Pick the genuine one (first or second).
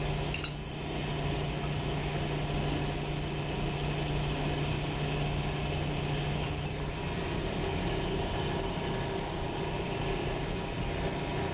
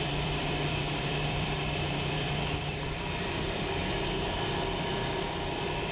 first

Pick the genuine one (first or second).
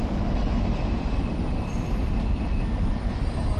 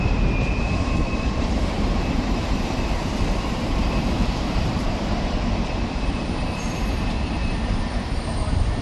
first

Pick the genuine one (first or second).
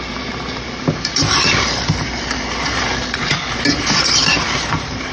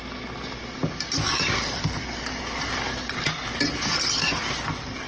second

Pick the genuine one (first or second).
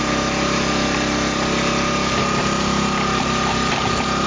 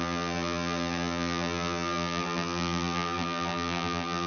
first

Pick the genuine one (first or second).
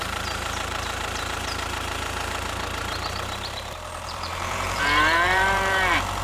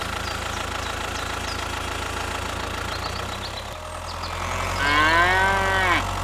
second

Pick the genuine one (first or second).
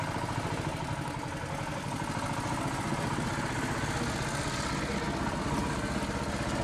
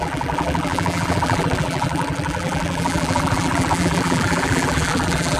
first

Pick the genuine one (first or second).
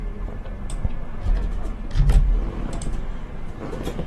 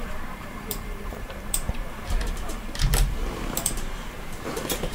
first